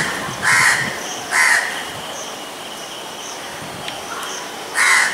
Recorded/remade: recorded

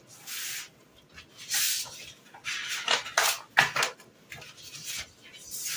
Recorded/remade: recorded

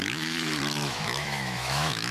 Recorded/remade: remade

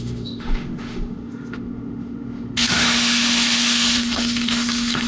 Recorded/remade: remade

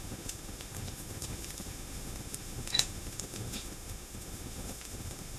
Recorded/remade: remade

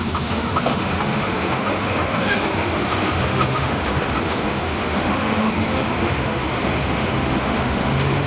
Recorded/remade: remade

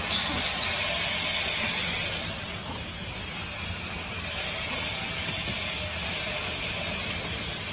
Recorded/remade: recorded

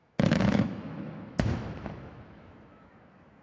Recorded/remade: remade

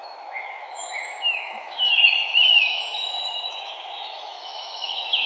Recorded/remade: remade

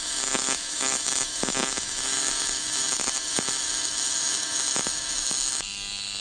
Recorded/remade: remade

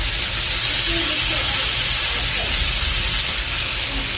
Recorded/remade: recorded